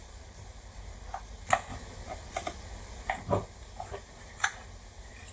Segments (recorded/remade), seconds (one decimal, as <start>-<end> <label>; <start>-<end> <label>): 0.0-5.3 recorded